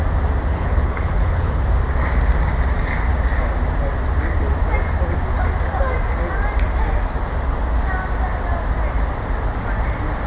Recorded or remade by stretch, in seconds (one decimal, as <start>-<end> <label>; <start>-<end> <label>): 0.0-0.5 recorded; 0.5-1.6 remade; 1.6-10.3 recorded